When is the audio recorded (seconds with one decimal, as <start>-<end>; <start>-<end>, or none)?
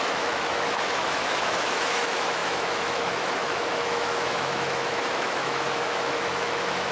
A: none